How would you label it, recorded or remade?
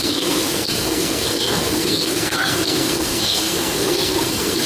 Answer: remade